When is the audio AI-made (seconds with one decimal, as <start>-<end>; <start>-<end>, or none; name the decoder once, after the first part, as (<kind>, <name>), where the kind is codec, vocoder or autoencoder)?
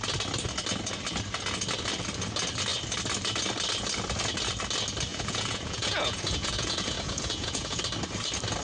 5.1-7.8 (vocoder, Vocos)